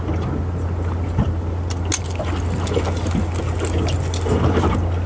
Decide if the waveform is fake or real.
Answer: real